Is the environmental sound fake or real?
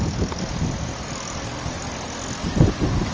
real